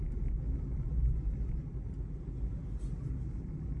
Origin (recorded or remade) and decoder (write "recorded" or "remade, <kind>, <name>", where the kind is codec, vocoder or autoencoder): recorded